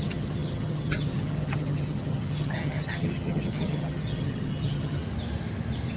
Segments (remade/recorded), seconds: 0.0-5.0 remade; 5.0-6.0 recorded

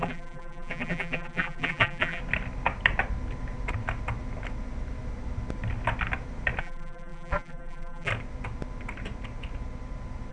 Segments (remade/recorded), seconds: 0.0-2.2 remade; 2.2-6.6 recorded; 6.6-8.1 remade; 8.1-10.3 recorded

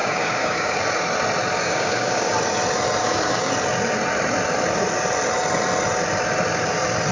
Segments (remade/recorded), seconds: 0.0-0.8 remade; 0.8-1.6 recorded; 1.6-2.3 remade; 2.3-3.0 recorded; 3.0-3.5 remade; 3.5-7.1 recorded

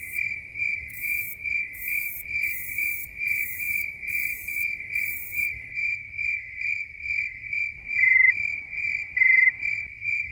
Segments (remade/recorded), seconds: 0.0-6.7 remade; 6.7-7.7 recorded; 7.7-10.3 remade